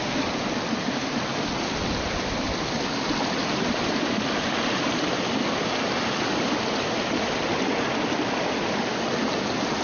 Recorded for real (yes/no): yes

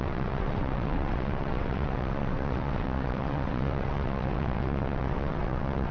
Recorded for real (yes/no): no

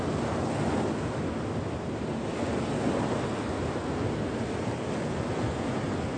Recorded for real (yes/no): yes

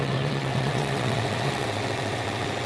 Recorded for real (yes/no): no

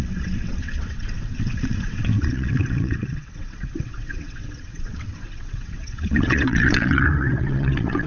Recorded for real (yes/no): no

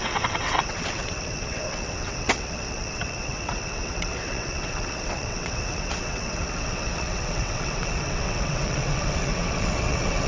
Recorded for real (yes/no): no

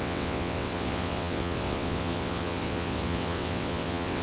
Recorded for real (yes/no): no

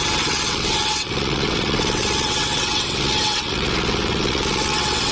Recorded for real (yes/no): no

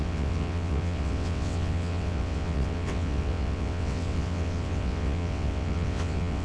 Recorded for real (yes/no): no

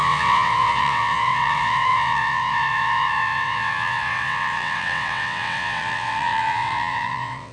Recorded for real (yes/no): no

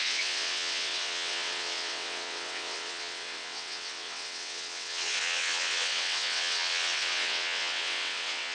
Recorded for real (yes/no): no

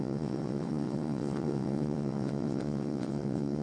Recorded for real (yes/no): no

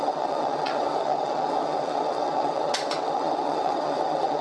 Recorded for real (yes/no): no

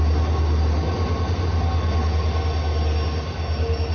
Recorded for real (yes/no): yes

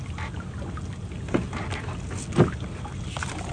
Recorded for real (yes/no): yes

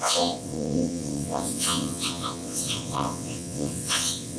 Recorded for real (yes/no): no